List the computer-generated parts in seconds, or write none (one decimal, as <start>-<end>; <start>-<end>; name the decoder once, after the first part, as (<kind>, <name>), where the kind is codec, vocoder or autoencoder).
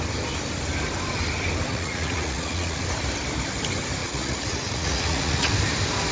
1.7-2.8 (vocoder, Vocos); 4.0-5.5